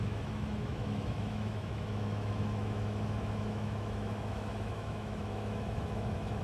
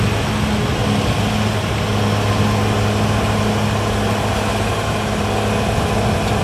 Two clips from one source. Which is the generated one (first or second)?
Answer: first